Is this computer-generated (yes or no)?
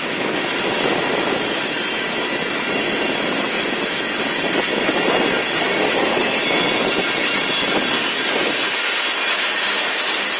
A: no